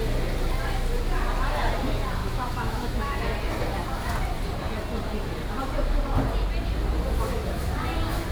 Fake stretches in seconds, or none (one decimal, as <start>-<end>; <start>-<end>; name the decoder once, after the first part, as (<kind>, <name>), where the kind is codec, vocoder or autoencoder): 2.2-3.2 (autoencoder, DAC-VAE)